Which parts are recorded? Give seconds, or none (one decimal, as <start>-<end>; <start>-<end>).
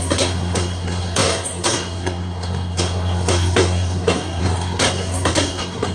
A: none